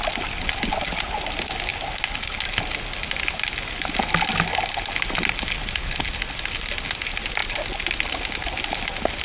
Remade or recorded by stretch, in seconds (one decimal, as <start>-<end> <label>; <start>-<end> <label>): 0.0-9.2 recorded

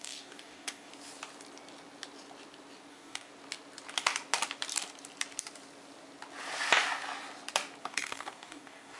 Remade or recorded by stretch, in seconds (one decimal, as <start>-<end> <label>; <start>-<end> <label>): 0.0-0.9 remade; 0.9-2.9 recorded; 2.9-3.3 remade; 3.3-7.8 recorded; 7.8-9.0 remade

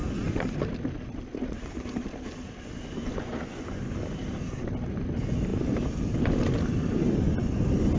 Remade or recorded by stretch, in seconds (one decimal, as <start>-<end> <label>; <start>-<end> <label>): 0.0-3.0 recorded; 3.0-3.9 remade; 3.9-8.0 recorded

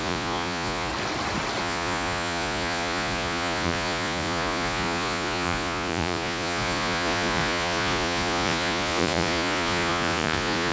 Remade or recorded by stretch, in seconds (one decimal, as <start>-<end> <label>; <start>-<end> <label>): 0.0-0.9 remade; 0.9-1.6 recorded; 1.6-10.7 remade

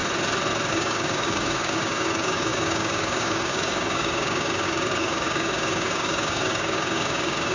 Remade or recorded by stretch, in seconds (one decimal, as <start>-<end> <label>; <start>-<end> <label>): 0.0-0.7 recorded; 0.7-7.5 remade

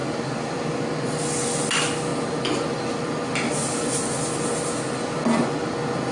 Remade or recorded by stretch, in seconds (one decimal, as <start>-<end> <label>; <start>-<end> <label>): 0.0-6.1 recorded

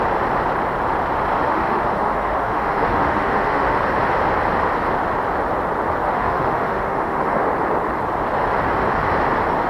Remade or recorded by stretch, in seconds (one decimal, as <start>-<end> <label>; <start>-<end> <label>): 0.0-1.5 recorded; 1.5-3.8 remade; 3.8-6.0 recorded; 6.0-7.4 remade; 7.4-9.7 recorded